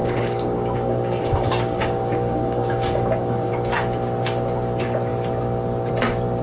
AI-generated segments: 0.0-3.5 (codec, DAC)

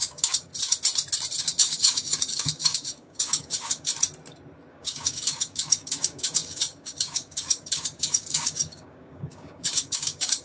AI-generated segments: 0.0-0.5 (codec, DAC); 1.4-3.9; 4.7-10.4

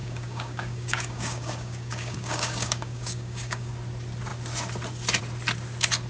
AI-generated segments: 0.0-3.7 (codec, DAC)